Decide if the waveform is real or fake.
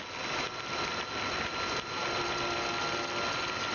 real